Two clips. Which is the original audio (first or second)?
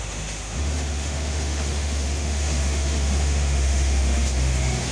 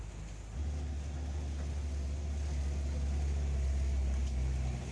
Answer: second